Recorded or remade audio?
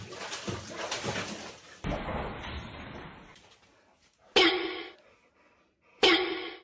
recorded